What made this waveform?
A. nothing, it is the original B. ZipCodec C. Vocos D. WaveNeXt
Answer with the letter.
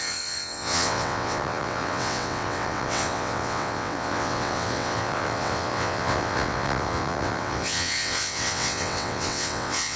D